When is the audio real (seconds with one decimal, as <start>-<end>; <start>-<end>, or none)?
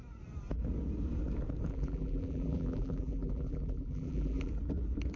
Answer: 0.0-1.7; 4.5-5.2